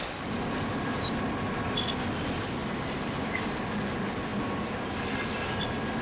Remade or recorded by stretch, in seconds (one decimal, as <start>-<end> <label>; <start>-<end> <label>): 0.0-6.0 recorded